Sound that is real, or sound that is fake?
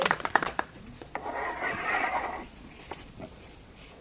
fake